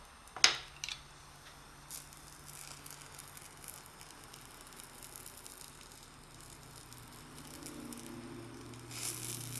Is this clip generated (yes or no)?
no